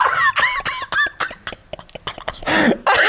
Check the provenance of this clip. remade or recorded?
recorded